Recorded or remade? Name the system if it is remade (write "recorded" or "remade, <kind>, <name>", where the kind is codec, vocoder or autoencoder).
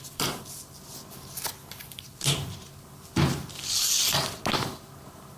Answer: recorded